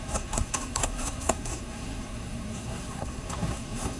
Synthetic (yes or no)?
yes